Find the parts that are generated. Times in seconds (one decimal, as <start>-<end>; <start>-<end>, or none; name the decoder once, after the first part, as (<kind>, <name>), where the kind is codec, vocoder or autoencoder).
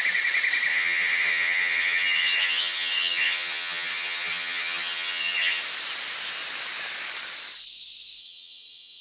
0.7-5.6 (vocoder, HiFi-GAN); 8.2-9.0